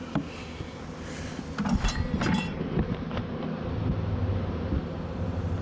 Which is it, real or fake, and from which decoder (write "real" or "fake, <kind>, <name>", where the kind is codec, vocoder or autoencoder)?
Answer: real